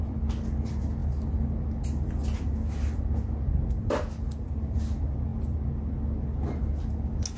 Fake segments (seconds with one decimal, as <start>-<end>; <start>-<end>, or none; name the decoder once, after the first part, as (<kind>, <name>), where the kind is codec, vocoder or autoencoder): none